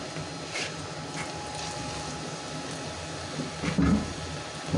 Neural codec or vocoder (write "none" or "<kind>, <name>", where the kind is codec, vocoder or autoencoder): none